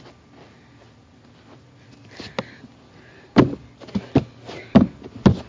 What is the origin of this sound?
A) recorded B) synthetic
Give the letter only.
A